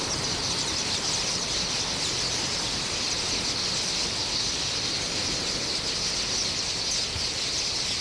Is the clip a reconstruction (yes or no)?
no